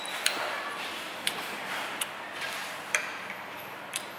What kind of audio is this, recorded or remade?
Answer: remade